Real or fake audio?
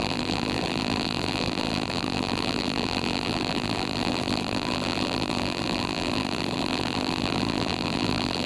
fake